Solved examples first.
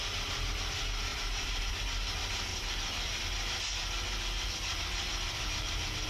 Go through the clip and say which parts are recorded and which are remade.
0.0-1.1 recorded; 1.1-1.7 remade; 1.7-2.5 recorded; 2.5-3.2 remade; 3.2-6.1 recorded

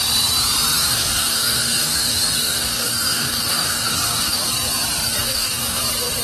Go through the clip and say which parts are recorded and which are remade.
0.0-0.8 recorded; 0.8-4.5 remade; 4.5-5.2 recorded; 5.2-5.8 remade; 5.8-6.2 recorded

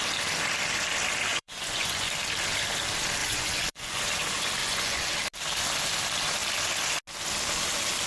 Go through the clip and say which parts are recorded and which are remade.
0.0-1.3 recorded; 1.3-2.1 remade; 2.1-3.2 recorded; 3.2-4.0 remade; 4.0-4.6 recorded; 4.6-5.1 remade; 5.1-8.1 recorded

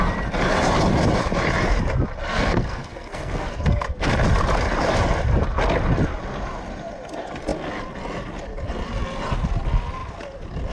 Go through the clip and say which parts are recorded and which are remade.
0.0-2.3 recorded; 2.3-4.1 remade; 4.1-10.7 recorded